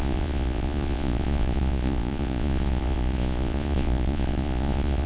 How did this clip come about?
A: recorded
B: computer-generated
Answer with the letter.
B